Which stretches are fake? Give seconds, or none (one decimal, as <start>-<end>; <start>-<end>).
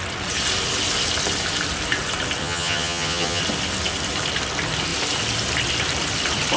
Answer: 2.4-3.4